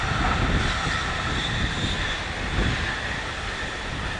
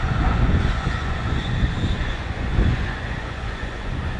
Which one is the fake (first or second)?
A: second